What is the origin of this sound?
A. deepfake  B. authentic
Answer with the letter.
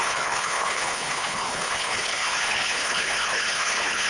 A